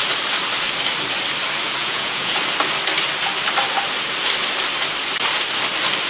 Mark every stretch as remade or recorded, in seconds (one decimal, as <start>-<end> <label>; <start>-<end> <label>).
0.0-1.8 recorded; 1.8-2.4 remade; 2.4-6.1 recorded

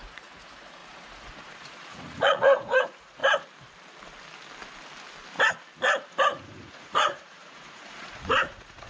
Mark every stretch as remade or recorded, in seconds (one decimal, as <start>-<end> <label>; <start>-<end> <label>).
0.0-3.2 remade; 3.2-6.1 recorded; 6.1-8.9 remade

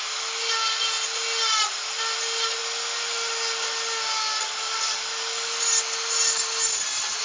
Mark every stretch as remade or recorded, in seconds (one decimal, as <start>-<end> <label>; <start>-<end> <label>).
0.0-7.2 recorded

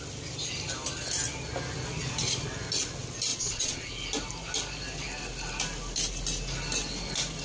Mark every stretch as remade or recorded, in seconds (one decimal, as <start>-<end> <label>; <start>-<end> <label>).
0.0-3.3 recorded; 3.3-3.9 remade; 3.9-7.4 recorded

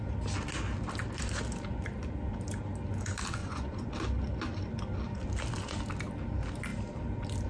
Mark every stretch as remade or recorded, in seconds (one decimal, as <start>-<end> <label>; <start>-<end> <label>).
0.0-3.4 recorded; 3.4-3.9 remade; 3.9-7.5 recorded

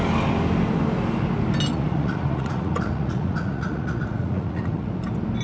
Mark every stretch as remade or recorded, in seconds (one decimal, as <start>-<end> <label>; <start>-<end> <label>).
0.0-1.7 recorded; 1.7-4.9 remade; 4.9-5.4 recorded

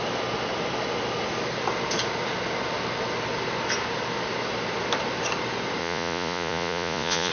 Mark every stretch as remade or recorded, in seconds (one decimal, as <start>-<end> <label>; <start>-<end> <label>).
0.0-5.8 recorded; 5.8-7.3 remade

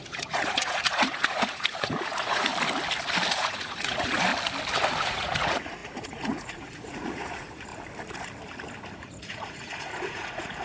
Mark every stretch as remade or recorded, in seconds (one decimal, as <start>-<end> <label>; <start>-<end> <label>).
0.0-2.5 remade; 2.5-3.3 recorded; 3.3-4.3 remade; 4.3-5.0 recorded; 5.0-7.7 remade; 7.7-8.9 recorded; 8.9-10.6 remade